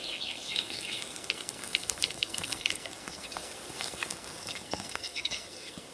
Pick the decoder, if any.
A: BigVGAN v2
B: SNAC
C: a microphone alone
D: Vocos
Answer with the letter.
B